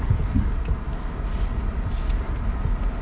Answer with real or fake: real